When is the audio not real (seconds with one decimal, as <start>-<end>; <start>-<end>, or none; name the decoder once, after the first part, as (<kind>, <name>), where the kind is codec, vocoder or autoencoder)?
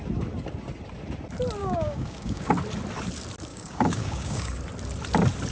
1.6-2.5 (codec, DAC); 3.5-4.6